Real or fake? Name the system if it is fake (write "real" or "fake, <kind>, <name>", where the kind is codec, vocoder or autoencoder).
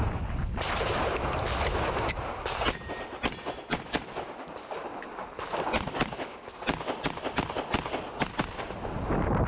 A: real